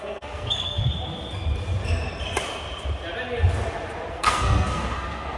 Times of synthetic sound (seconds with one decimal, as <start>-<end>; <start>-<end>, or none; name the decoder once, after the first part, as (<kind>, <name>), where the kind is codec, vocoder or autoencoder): 0.0-0.9 (codec, SNAC); 4.1-5.4